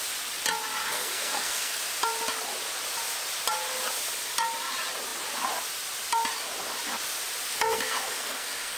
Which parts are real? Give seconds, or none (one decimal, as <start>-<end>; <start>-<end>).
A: 0.0-0.8; 1.8-7.5